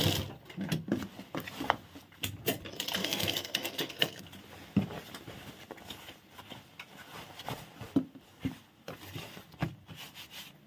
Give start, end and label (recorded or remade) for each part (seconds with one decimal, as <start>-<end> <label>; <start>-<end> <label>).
0.0-3.0 recorded; 3.0-4.2 remade; 4.2-10.7 recorded

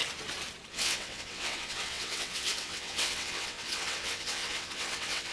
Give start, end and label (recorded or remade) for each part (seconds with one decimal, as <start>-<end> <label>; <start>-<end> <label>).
0.0-0.7 recorded; 0.7-5.3 remade